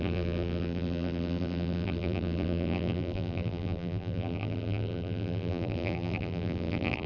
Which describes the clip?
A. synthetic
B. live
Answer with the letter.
A